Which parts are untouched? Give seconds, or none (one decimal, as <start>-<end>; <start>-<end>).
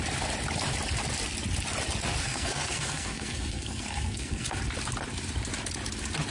0.0-2.2; 4.6-6.3